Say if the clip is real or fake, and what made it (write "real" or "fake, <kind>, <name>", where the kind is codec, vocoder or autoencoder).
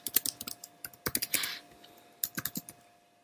real